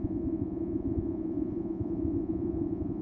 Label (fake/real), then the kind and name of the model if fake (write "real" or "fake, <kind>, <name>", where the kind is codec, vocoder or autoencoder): fake, vocoder, Vocos